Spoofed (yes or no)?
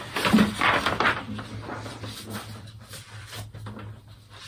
yes